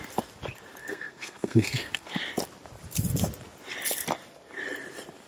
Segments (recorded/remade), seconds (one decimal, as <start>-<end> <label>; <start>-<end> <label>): 0.0-0.8 recorded; 0.8-2.2 remade; 2.2-5.3 recorded